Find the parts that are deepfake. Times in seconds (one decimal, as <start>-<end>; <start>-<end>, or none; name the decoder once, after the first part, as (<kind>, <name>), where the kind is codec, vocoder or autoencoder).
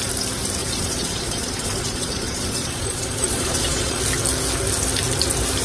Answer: 0.6-4.0 (vocoder, Vocos)